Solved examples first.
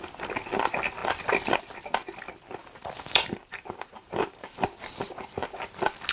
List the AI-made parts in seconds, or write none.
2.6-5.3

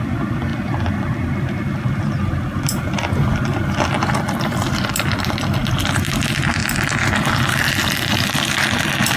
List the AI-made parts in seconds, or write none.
0.0-9.2

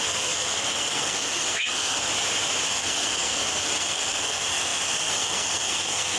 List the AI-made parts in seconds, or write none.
0.0-2.1; 2.7-6.2

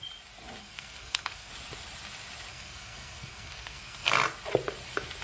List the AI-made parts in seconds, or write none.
0.6-1.5; 2.5-4.1

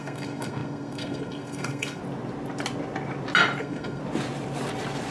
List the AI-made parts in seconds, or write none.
0.0-2.0; 3.6-4.0

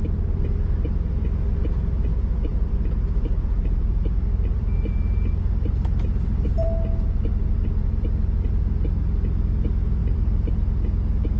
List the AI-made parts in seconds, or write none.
2.5-5.7; 10.0-10.5

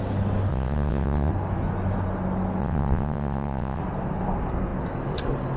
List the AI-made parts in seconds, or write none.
0.5-1.3; 2.6-3.8